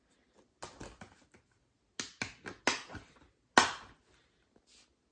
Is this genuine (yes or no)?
yes